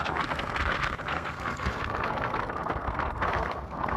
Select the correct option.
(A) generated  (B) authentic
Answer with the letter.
A